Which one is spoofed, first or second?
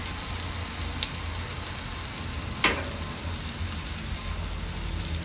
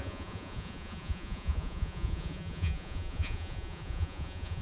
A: second